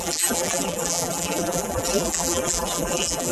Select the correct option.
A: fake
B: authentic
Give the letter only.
A